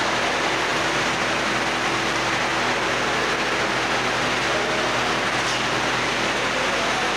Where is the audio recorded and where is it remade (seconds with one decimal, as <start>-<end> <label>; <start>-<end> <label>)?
0.0-0.7 recorded; 0.7-1.9 remade; 1.9-7.2 recorded